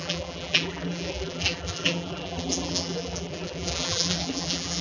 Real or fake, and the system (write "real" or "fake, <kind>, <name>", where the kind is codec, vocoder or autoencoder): fake, vocoder, BigVGAN v2